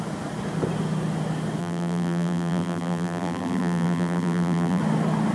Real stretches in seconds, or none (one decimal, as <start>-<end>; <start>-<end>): 0.0-1.6; 4.8-5.3